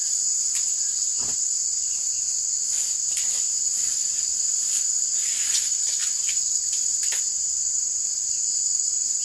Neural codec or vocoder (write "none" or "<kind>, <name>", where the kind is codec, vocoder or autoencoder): none